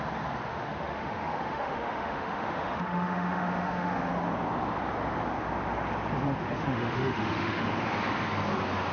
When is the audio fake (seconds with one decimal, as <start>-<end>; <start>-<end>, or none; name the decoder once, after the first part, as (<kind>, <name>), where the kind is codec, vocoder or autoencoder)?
0.5-4.1 (autoencoder, DAC-VAE); 6.4-7.7